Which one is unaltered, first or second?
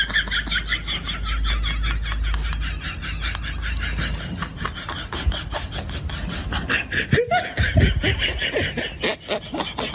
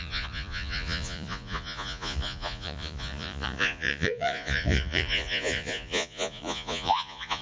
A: first